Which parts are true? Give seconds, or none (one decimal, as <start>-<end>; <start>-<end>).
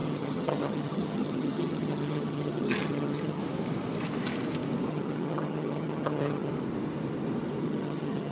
3.4-4.9; 6.5-7.6